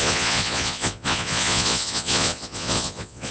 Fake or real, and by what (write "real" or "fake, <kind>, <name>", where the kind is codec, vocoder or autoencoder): fake, vocoder, Vocos